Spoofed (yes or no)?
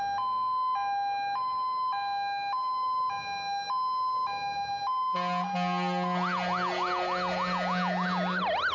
no